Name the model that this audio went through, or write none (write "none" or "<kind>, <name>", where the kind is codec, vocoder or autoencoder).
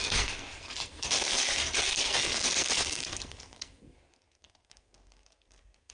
codec, SNAC